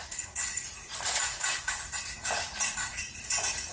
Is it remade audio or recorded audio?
remade